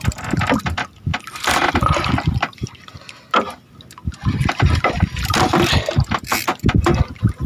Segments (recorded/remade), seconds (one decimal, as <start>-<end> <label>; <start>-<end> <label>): 0.0-1.1 recorded; 1.1-1.7 remade; 1.7-7.5 recorded